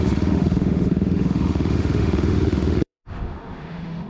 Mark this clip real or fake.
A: fake